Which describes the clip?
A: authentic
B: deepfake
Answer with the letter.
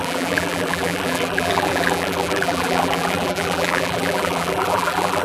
B